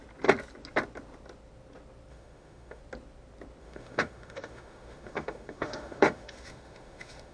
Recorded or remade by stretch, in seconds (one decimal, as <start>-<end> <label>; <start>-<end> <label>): 0.0-2.1 recorded; 2.1-2.8 remade; 2.8-3.6 recorded; 3.6-7.3 remade

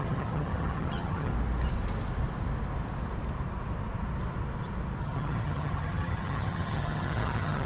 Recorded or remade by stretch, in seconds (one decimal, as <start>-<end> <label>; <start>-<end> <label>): 0.0-1.3 remade; 1.3-5.0 recorded; 5.0-7.7 remade

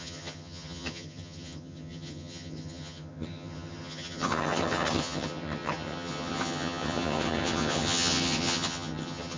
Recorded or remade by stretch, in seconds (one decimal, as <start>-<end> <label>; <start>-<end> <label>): 0.0-9.4 remade

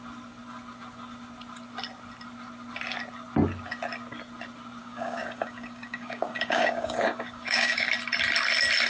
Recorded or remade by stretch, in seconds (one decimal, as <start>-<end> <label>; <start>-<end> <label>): 0.0-4.8 recorded; 4.8-7.9 remade; 7.9-8.9 recorded

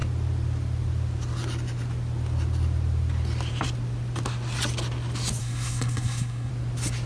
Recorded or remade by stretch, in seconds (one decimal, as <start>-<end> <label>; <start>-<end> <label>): 0.0-5.4 recorded; 5.4-6.5 remade; 6.5-7.1 recorded

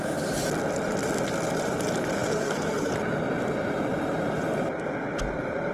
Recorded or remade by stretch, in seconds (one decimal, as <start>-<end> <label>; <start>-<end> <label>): 0.0-2.2 recorded; 2.2-2.9 remade; 2.9-5.7 recorded

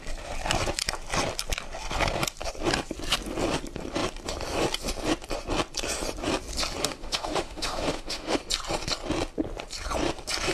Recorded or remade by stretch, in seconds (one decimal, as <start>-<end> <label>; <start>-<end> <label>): 0.0-6.8 recorded; 6.8-8.4 remade; 8.4-10.5 recorded